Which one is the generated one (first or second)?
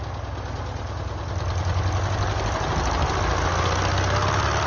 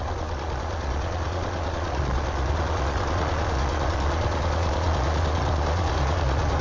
second